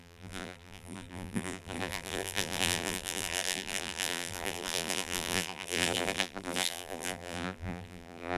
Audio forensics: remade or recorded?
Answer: remade